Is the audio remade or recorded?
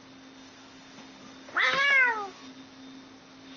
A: recorded